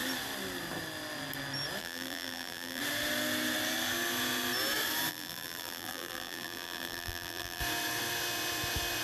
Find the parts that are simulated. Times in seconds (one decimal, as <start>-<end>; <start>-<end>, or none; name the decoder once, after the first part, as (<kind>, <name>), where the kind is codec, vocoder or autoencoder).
1.8-2.8 (vocoder, BigVGAN v2); 5.1-7.6

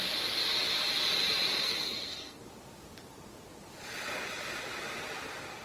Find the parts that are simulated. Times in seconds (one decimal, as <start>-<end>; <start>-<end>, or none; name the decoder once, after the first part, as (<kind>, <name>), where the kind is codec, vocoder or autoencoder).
1.6-2.4 (codec, SNAC)

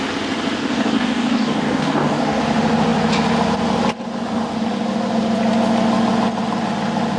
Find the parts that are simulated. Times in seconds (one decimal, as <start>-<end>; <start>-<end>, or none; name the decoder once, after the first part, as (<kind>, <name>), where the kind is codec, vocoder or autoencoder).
0.6-2.4 (codec, DAC)

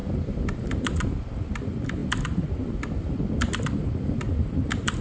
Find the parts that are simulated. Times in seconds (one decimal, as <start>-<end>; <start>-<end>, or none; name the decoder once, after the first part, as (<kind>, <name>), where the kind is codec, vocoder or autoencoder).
none

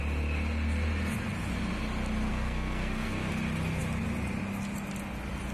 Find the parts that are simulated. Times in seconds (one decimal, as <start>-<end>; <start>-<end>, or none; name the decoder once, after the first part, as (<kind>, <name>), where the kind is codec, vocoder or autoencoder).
2.3-3.3 (codec, SNAC)

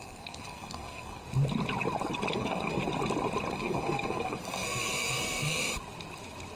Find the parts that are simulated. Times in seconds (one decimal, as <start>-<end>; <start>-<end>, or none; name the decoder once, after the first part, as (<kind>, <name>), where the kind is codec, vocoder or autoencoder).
0.0-1.2 (codec, SNAC); 2.3-2.8; 3.5-5.6

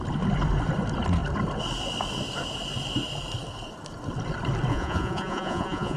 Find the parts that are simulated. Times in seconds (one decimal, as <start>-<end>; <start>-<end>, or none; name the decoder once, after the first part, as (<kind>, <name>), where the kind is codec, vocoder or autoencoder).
4.7-6.0 (vocoder, Vocos)

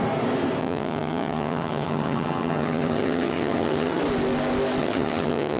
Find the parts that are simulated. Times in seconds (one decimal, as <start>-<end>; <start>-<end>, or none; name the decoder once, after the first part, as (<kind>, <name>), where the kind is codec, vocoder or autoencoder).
0.6-4.0 (vocoder, HiFi-GAN); 4.8-5.6